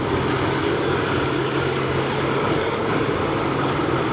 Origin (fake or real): fake